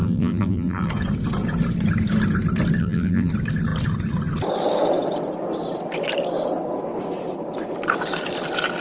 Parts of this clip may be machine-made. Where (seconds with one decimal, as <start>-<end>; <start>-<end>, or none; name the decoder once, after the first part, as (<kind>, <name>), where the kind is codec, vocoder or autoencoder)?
0.0-0.9 (vocoder, BigVGAN v2); 2.8-3.3